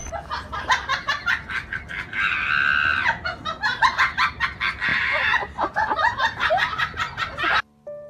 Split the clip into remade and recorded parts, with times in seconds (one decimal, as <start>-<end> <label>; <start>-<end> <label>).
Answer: 0.0-4.9 recorded; 4.9-6.5 remade; 6.5-8.1 recorded